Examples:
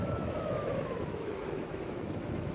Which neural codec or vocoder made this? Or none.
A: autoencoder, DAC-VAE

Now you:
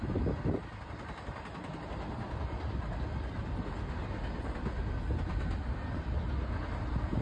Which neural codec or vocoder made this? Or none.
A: none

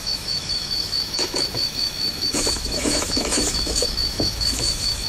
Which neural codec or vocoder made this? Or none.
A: autoencoder, DAC-VAE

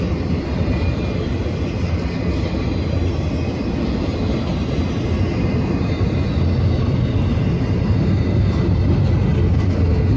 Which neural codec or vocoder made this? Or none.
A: none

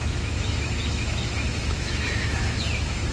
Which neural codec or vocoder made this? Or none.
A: autoencoder, DAC-VAE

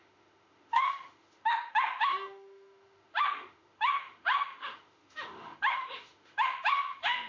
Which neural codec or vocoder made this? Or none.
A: autoencoder, DAC-VAE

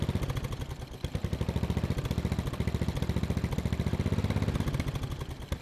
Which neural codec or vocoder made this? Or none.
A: none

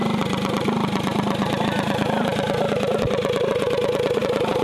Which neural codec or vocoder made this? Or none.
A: none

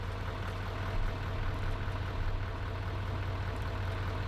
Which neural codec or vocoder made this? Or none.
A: none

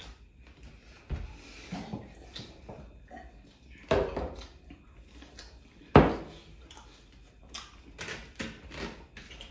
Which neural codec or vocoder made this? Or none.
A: none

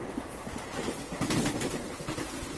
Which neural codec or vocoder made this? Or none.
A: none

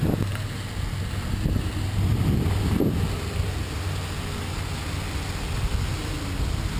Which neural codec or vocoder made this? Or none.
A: none